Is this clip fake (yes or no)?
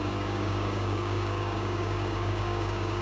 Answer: yes